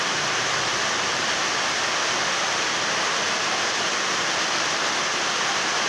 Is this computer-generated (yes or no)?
yes